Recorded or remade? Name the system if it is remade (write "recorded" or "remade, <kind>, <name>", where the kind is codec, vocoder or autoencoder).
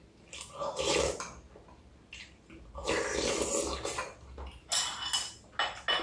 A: recorded